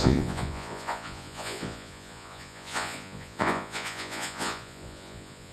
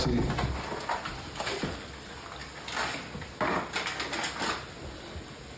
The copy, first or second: first